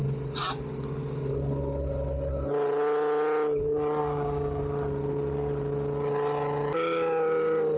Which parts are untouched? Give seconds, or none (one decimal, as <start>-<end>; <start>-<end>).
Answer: 0.0-4.0; 4.6-7.8